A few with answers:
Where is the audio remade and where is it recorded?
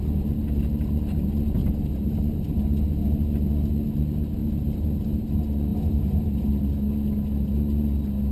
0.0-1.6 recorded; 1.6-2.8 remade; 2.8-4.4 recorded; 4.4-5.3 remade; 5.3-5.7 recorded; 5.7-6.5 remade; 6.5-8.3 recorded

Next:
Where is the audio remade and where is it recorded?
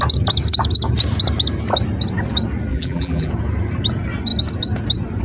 0.0-2.7 recorded; 2.7-3.3 remade; 3.3-5.2 recorded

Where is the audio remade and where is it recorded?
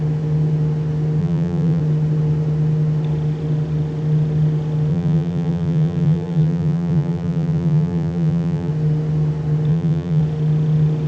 0.0-1.2 recorded; 1.2-1.8 remade; 1.8-4.9 recorded; 4.9-8.7 remade; 8.7-9.7 recorded; 9.7-10.2 remade; 10.2-11.1 recorded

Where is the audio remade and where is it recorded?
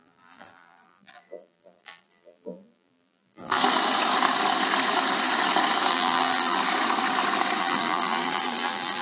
0.0-3.6 remade; 3.6-5.9 recorded; 5.9-6.6 remade; 6.6-7.6 recorded; 7.6-9.0 remade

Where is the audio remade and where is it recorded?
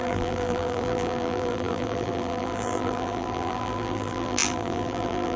0.0-5.4 remade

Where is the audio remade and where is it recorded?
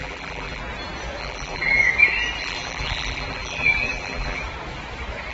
0.0-0.6 remade; 0.6-1.2 recorded; 1.2-1.8 remade; 1.8-2.4 recorded; 2.4-4.4 remade; 4.4-5.3 recorded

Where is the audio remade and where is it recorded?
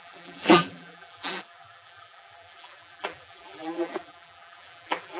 0.0-5.2 remade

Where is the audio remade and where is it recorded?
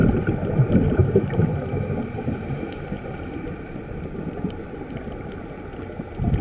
0.0-1.0 recorded; 1.0-4.8 remade; 4.8-6.4 recorded